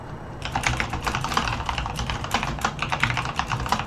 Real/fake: fake